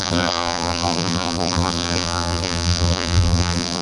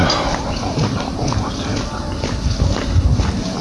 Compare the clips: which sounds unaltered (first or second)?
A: second